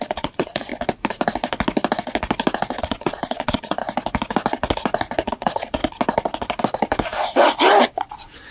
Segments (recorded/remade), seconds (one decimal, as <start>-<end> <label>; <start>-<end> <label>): 0.0-0.7 remade; 0.7-2.8 recorded; 2.8-3.8 remade; 3.8-5.3 recorded; 5.3-5.8 remade; 5.8-7.8 recorded; 7.8-8.5 remade